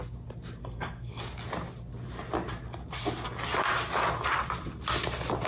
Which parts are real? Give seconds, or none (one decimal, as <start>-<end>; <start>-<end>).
0.0-0.6; 1.2-5.5